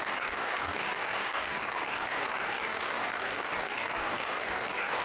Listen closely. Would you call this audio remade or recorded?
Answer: remade